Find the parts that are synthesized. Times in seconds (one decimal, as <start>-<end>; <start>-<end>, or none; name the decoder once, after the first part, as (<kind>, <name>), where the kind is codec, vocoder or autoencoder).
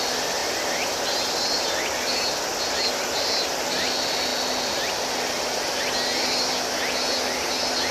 none